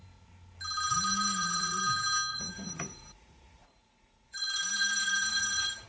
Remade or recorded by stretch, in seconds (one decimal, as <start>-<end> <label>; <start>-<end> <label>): 0.0-0.9 recorded; 0.9-1.8 remade; 1.8-2.3 recorded; 2.3-5.9 remade